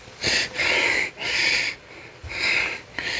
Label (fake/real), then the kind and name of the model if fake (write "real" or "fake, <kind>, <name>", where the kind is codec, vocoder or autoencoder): real